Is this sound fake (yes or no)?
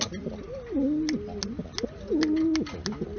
no